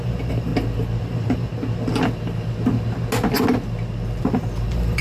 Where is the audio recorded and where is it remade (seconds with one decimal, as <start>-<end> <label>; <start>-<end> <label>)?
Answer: 0.0-0.5 remade; 0.5-1.0 recorded; 1.0-1.5 remade; 1.5-4.2 recorded; 4.2-5.0 remade